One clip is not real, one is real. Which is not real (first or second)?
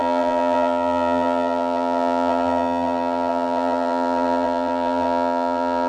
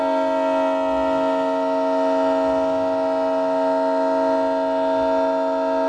first